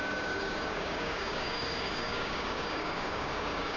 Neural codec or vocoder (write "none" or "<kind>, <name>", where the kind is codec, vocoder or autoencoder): codec, DAC